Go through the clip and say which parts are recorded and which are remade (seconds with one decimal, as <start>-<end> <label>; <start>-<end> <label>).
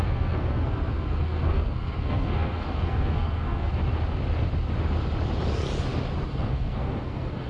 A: 0.0-3.7 remade; 3.7-6.3 recorded; 6.3-7.5 remade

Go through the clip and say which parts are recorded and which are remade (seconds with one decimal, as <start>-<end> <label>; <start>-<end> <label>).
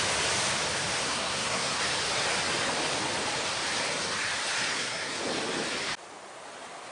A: 0.0-1.0 recorded; 1.0-1.8 remade; 1.8-4.7 recorded; 4.7-5.2 remade; 5.2-6.9 recorded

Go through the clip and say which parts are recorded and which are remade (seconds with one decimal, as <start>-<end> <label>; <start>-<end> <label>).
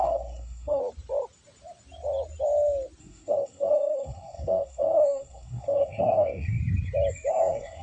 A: 0.0-0.8 remade; 0.8-3.0 recorded; 3.0-6.6 remade; 6.6-7.3 recorded; 7.3-7.8 remade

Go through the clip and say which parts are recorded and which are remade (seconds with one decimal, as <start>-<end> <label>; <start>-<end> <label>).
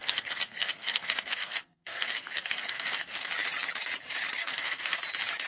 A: 0.0-3.3 remade; 3.3-4.4 recorded; 4.4-5.0 remade; 5.0-5.5 recorded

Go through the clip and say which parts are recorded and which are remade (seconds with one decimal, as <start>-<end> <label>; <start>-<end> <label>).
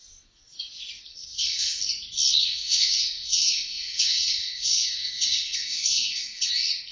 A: 0.0-1.1 recorded; 1.1-1.8 remade; 1.8-2.4 recorded; 2.4-6.5 remade; 6.5-6.9 recorded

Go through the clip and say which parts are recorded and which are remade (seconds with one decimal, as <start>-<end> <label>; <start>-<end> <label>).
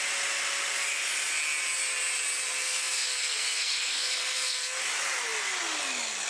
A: 0.0-2.6 recorded; 2.6-4.8 remade; 4.8-6.3 recorded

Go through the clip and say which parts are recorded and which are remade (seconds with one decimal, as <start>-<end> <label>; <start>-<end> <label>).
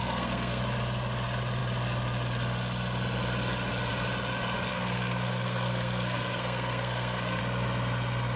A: 0.0-0.6 remade; 0.6-4.7 recorded; 4.7-7.4 remade; 7.4-8.4 recorded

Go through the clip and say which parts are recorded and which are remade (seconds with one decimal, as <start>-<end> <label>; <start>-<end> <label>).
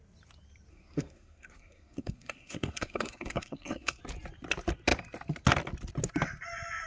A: 0.0-0.7 recorded; 0.7-4.0 remade; 4.0-6.9 recorded